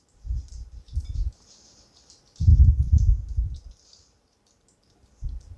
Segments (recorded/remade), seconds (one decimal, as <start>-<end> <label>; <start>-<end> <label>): 0.0-2.5 remade; 2.5-3.9 recorded; 3.9-5.6 remade